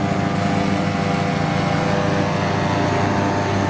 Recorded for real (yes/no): yes